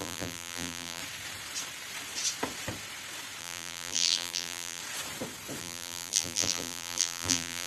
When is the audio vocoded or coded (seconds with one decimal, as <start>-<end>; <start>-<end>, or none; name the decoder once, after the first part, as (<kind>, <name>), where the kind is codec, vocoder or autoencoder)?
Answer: 0.0-1.0 (vocoder, BigVGAN v2); 3.4-4.8; 5.6-7.7